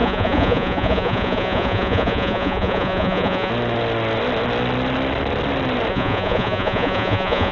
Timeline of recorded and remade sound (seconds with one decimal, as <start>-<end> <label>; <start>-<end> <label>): 0.0-3.5 remade; 3.5-5.9 recorded; 5.9-7.5 remade